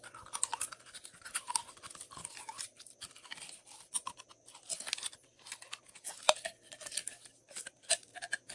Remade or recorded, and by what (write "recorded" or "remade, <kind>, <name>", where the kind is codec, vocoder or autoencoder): recorded